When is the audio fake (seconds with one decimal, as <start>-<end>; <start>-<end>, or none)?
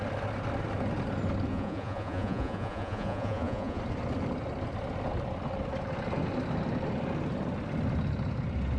1.5-3.8